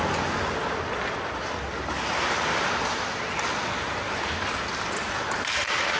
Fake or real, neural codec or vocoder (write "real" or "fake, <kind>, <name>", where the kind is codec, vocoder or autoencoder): real